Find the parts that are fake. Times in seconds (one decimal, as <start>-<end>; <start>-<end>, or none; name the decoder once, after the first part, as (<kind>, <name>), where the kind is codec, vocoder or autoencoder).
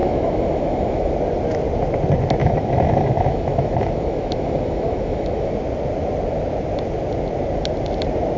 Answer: 0.0-1.1 (autoencoder, DAC-VAE); 2.4-5.5